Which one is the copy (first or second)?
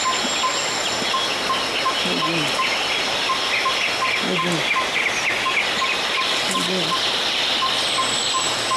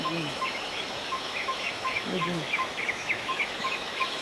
second